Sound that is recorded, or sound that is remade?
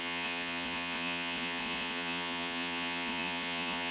remade